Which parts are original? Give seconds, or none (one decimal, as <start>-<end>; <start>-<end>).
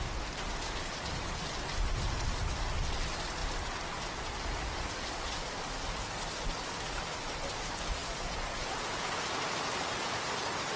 0.0-8.0; 9.2-10.8